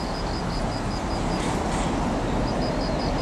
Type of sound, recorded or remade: recorded